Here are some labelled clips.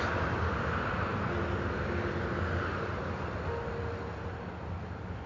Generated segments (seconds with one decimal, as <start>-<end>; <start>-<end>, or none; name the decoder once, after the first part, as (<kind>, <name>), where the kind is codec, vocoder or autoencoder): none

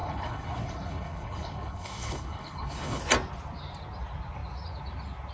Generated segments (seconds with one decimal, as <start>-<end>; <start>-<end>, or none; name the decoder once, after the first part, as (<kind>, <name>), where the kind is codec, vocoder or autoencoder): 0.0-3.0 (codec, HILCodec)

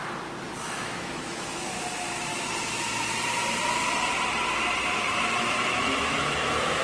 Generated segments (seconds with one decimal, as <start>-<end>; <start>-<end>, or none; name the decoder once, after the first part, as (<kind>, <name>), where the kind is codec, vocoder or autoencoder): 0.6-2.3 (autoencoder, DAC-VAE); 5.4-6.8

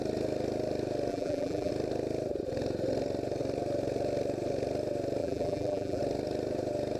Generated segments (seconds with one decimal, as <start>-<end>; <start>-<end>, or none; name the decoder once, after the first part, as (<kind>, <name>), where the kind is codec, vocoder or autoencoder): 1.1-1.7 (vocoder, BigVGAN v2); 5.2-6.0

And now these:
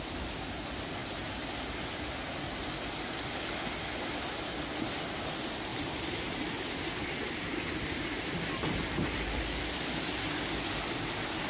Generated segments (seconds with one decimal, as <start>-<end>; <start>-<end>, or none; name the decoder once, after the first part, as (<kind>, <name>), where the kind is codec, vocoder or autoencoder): 5.7-6.4 (vocoder, BigVGAN v2)